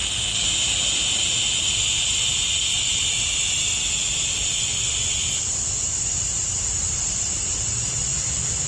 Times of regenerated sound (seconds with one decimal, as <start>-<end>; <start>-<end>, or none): 0.0-6.4; 7.2-8.1